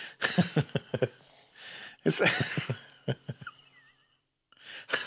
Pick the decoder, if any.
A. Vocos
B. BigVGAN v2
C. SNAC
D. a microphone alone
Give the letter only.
B